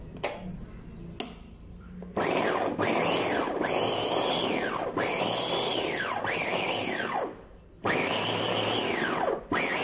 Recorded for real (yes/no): yes